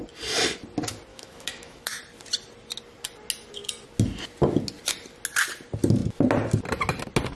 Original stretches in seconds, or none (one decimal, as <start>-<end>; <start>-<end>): 0.0-1.1; 2.0-7.4